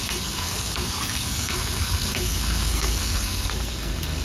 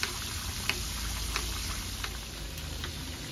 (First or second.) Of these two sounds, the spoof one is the first